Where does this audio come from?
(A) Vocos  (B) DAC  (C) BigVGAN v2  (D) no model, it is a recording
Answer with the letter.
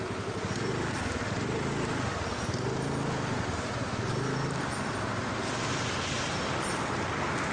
D